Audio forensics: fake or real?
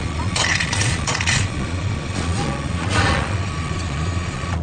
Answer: fake